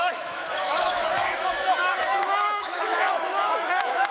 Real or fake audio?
fake